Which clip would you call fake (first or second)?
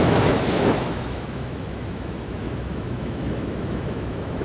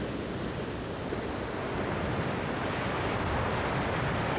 first